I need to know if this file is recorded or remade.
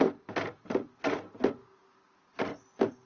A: recorded